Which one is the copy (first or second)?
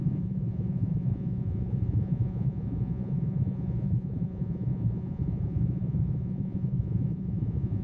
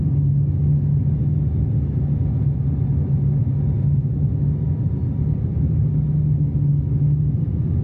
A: first